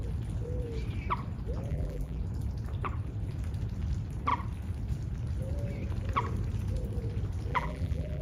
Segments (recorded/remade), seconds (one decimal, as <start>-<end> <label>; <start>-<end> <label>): 0.0-1.7 recorded; 1.7-2.2 remade; 2.2-7.5 recorded; 7.5-8.2 remade